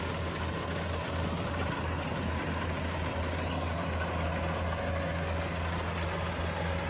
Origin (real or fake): real